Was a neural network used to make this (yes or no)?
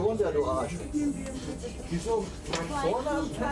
no